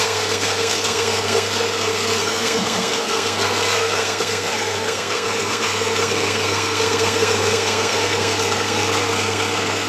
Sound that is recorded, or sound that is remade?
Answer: remade